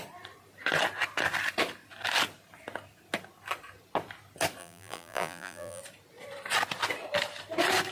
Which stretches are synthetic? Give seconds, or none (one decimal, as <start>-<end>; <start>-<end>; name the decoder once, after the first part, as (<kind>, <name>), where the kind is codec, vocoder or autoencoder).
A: 4.6-5.8 (vocoder, BigVGAN v2)